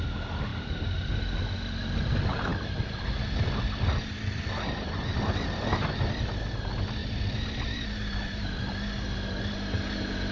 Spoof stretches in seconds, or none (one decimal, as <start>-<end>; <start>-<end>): 0.5-1.1; 7.0-8.6